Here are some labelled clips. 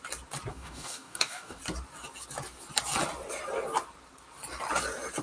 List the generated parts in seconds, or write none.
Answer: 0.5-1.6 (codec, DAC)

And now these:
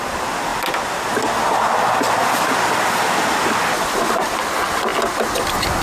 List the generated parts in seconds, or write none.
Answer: none